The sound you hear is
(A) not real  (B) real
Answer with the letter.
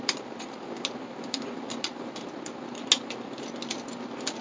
B